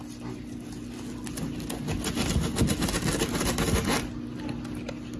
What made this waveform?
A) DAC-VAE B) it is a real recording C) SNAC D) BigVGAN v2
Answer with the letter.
B